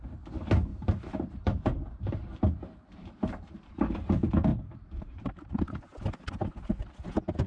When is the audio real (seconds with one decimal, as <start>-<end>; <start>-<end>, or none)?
0.0-0.7; 3.8-4.5; 5.6-7.5